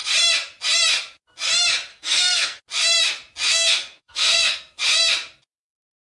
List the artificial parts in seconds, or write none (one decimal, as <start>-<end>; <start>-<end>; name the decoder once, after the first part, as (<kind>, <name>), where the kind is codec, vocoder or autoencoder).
1.9-2.6 (codec, SNAC); 3.5-4.8